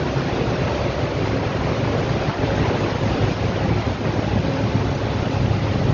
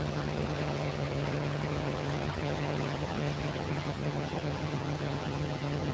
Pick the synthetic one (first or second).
second